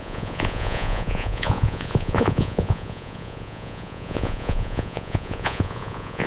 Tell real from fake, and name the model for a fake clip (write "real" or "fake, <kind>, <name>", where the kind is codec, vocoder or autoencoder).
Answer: fake, vocoder, Vocos